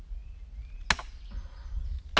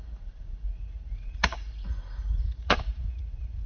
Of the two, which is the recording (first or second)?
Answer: first